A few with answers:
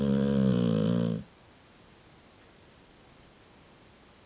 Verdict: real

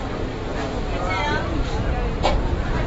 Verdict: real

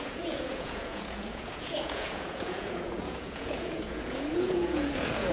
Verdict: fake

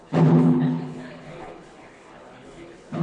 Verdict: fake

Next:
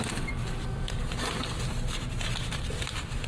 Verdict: fake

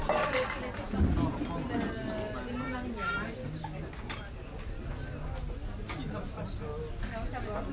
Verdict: real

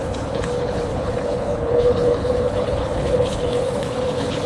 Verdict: fake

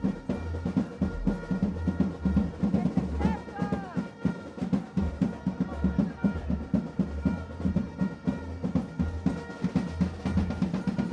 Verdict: real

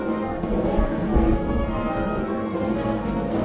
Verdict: fake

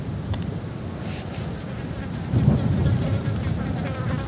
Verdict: real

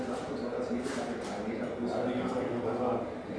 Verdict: real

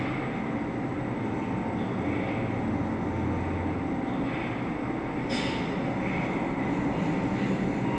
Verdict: real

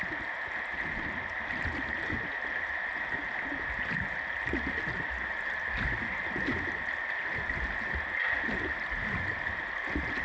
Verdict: real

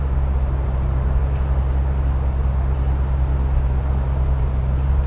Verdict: real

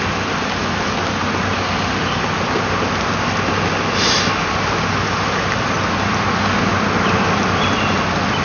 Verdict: real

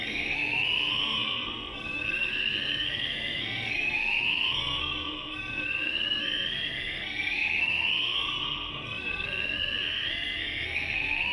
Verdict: fake